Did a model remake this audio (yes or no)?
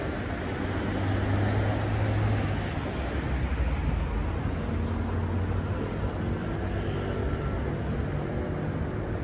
no